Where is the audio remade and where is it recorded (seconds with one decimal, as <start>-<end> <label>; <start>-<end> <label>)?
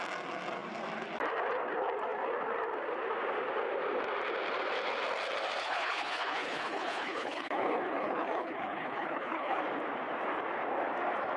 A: 0.0-5.6 recorded; 5.6-9.6 remade; 9.6-11.4 recorded